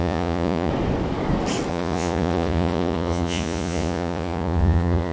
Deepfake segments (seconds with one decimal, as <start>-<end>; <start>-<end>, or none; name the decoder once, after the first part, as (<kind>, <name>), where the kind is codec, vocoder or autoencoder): 0.0-0.7 (vocoder, Vocos); 1.7-5.1